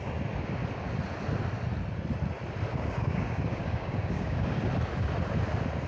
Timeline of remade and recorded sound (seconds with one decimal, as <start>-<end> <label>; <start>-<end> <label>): 0.0-2.7 recorded; 2.7-4.6 remade; 4.6-5.9 recorded